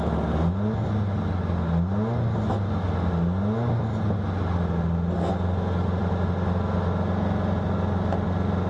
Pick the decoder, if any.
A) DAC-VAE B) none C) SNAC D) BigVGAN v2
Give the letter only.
B